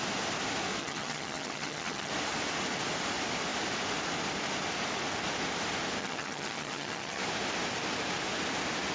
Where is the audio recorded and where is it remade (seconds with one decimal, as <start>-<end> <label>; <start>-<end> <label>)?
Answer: 0.0-0.8 recorded; 0.8-2.1 remade; 2.1-6.0 recorded; 6.0-7.2 remade; 7.2-8.9 recorded